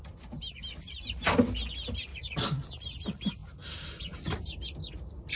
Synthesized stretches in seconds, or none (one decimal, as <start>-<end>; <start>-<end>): 2.1-2.7